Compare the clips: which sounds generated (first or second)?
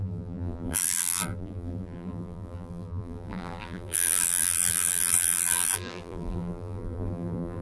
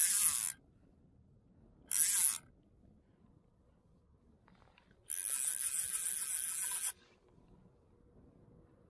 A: first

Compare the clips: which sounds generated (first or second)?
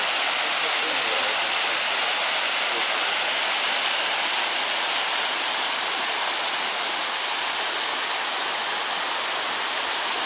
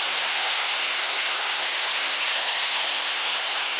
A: second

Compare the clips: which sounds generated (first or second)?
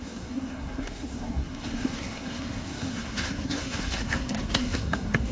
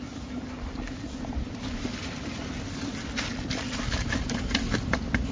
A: first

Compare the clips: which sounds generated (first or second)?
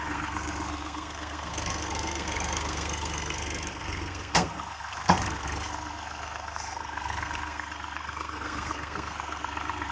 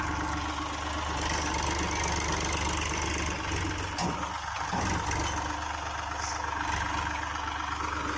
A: first